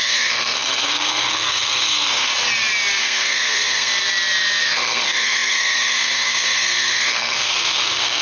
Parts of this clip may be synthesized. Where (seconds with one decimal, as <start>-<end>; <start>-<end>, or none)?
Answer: 0.0-2.3; 3.0-3.9; 4.6-8.2